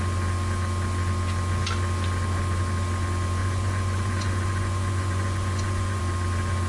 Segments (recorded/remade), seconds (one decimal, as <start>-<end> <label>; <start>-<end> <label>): 0.0-3.4 recorded; 3.4-6.0 remade; 6.0-6.7 recorded